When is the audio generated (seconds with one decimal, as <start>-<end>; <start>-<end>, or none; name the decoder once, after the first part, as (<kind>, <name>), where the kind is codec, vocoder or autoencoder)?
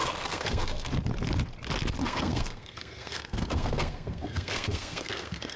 0.0-0.9 (codec, SNAC); 2.0-5.6